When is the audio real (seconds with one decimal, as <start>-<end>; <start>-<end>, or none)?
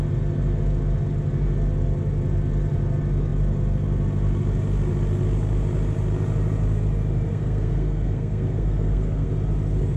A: 0.0-7.3; 9.3-10.0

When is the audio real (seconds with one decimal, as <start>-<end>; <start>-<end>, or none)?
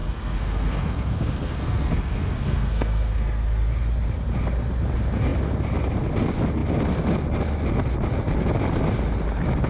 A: 3.7-9.7